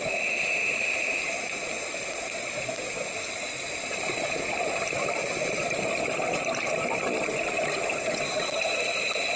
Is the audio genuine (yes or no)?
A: yes